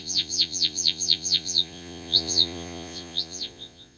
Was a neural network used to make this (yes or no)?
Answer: yes